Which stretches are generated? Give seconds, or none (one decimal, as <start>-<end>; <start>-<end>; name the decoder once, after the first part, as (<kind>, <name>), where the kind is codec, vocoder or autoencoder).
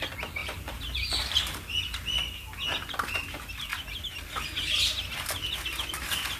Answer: 0.4-1.4 (vocoder, BigVGAN v2)